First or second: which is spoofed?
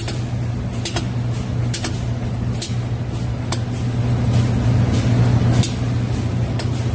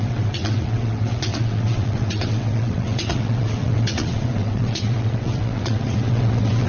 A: second